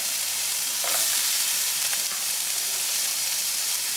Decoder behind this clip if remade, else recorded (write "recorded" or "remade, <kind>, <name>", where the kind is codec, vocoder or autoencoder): remade, vocoder, BigVGAN v2